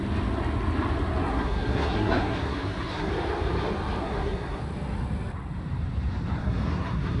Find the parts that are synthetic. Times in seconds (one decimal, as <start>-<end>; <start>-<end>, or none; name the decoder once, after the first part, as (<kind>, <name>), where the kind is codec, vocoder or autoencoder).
1.2-3.1 (codec, SNAC); 4.0-4.6; 6.4-7.2